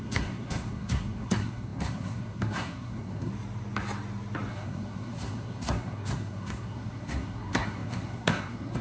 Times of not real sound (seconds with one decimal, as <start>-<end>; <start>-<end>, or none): 0.0-3.3; 4.5-8.8